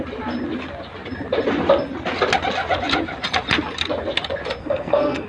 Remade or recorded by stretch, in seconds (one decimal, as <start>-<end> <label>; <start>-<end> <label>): 0.0-4.6 recorded; 4.6-5.3 remade